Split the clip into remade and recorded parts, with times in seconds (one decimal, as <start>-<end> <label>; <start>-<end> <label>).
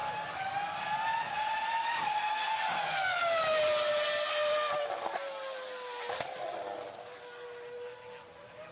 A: 0.0-8.7 recorded